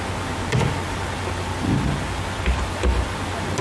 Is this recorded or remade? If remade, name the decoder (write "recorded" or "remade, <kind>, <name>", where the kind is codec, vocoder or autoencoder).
recorded